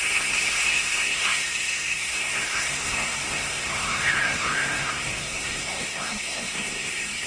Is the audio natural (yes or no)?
no